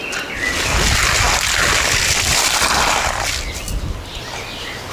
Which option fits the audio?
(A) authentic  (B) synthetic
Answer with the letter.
A